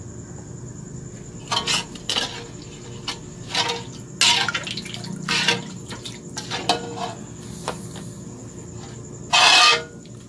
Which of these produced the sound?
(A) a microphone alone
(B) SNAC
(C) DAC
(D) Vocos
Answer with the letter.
A